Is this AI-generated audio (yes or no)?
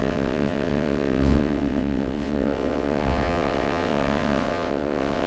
yes